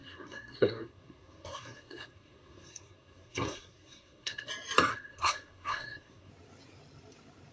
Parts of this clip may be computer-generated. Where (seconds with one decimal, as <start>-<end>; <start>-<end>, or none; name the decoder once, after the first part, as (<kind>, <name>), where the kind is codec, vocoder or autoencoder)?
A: 0.0-4.5 (codec, SNAC); 4.9-6.3